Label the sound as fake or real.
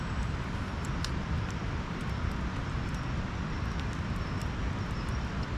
real